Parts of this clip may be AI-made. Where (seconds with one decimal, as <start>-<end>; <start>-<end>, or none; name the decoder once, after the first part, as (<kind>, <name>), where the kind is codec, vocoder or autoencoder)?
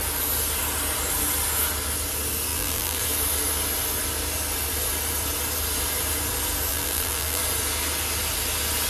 2.5-3.0 (vocoder, BigVGAN v2); 6.7-7.4